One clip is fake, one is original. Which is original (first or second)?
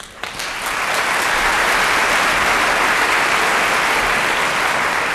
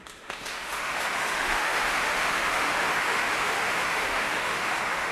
first